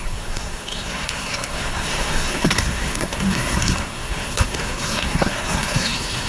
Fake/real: fake